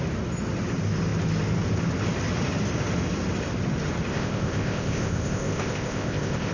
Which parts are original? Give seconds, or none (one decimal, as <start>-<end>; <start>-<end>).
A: 0.0-4.1